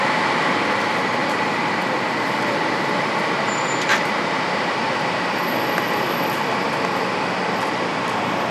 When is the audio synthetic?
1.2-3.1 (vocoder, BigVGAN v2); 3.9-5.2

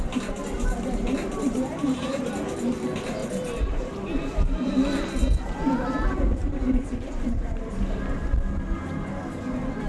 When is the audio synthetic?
1.2-2.3 (vocoder, BigVGAN v2); 3.2-3.9; 6.4-8.2

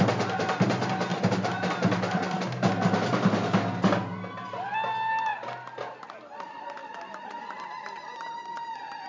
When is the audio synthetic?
1.1-1.7 (vocoder, BigVGAN v2); 6.8-8.0

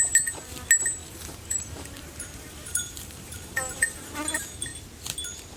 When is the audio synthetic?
1.0-4.1 (vocoder, BigVGAN v2)

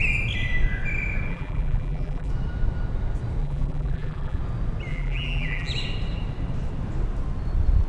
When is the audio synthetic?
1.3-2.3 (vocoder, BigVGAN v2); 3.4-4.4; 4.9-5.7

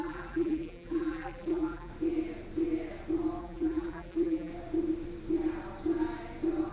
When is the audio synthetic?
0.0-1.9 (vocoder, BigVGAN v2); 3.4-4.5